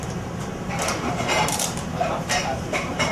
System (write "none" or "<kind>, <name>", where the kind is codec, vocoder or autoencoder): vocoder, BigVGAN v2